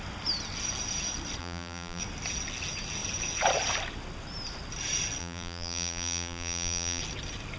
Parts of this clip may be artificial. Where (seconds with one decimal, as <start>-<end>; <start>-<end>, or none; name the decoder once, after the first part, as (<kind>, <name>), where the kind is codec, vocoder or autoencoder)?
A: 1.4-2.0 (vocoder, BigVGAN v2); 5.2-7.0